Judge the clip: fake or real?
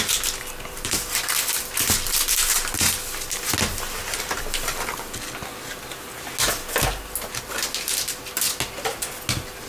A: real